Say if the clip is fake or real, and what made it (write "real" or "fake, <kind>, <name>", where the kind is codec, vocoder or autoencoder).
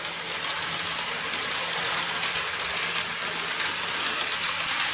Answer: real